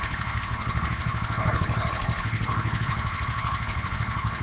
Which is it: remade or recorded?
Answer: remade